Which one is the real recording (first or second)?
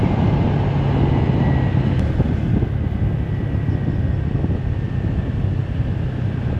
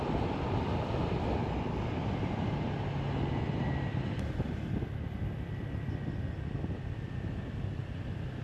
first